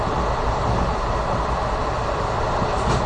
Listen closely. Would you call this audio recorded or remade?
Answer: recorded